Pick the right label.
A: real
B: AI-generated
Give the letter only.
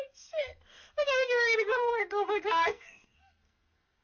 B